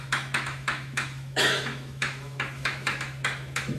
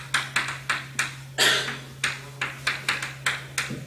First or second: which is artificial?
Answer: first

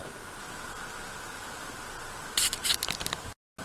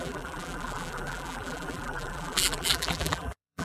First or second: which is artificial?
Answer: second